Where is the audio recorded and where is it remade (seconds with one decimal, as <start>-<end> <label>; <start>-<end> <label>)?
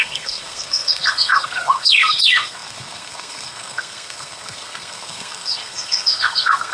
0.0-6.7 remade